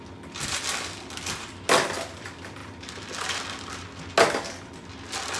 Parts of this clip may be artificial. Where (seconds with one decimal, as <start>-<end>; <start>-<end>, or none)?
none